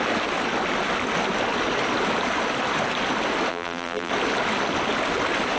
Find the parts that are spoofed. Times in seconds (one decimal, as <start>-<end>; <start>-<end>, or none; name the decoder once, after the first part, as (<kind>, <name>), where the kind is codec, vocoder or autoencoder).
3.5-4.1 (vocoder, BigVGAN v2)